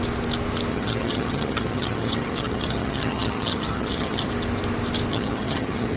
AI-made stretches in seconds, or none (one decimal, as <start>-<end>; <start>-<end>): 0.7-4.3; 5.1-6.0